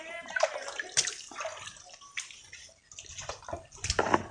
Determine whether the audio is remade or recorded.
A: recorded